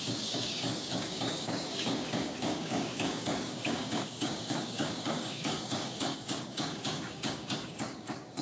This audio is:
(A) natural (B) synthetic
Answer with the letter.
B